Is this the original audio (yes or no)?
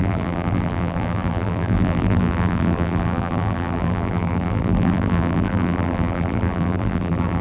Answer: no